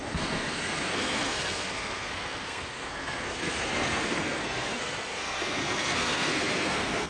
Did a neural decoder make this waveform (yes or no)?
yes